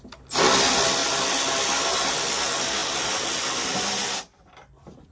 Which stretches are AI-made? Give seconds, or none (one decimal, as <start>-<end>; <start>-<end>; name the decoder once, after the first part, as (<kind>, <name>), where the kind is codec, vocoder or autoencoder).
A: none